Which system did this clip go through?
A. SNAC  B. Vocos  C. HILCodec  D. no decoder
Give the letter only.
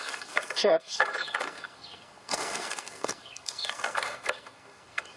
A